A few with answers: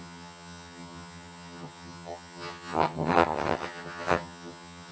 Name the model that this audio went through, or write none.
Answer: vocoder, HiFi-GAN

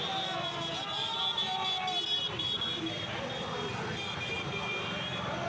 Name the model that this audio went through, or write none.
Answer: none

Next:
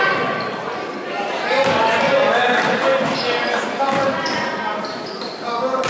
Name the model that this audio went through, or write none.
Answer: none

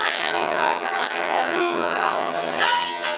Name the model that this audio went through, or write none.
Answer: vocoder, HiFi-GAN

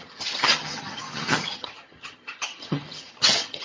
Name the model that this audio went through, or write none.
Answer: vocoder, HiFi-GAN